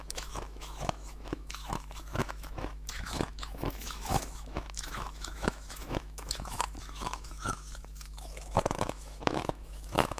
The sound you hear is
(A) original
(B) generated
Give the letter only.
B